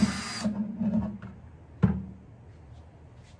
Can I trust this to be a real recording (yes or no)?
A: yes